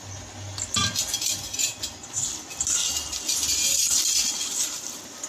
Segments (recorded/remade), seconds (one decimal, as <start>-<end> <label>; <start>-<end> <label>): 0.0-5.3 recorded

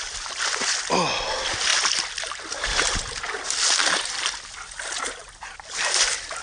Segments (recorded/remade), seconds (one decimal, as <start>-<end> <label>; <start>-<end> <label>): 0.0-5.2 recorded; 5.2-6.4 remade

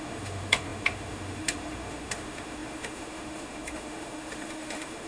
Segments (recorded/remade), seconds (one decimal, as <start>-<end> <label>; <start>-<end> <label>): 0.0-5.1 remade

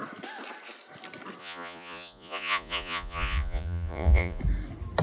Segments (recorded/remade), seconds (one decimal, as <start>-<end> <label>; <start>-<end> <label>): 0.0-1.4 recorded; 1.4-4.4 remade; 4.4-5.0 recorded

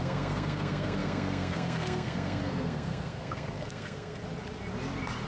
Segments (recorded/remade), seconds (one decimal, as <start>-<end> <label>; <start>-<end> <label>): 0.0-4.2 remade; 4.2-5.3 recorded

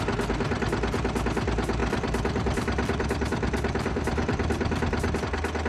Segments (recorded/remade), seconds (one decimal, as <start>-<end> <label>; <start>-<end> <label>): 0.0-1.8 recorded; 1.8-5.2 remade; 5.2-5.7 recorded